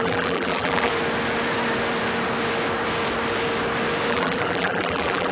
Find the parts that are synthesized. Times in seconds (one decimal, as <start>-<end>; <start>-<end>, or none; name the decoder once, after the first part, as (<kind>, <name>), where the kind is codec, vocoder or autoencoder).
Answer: 0.0-0.9 (vocoder, BigVGAN v2); 4.1-5.3

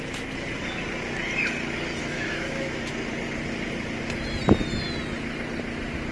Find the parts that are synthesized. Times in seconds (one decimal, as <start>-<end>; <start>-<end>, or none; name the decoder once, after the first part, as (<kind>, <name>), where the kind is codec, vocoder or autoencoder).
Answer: 2.0-2.9 (autoencoder, DAC-VAE)